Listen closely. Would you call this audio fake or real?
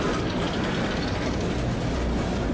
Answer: real